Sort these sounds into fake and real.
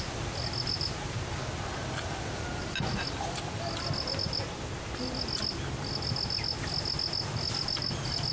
real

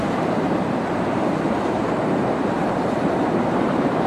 fake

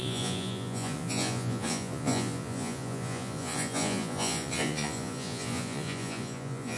fake